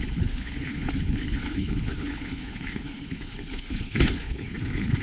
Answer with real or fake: fake